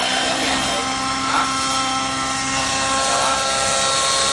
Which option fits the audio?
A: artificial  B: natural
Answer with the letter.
B